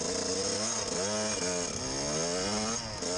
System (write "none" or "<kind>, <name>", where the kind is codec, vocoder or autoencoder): none